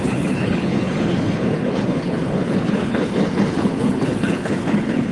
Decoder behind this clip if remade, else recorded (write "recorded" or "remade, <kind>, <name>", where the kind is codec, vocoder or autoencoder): remade, codec, HILCodec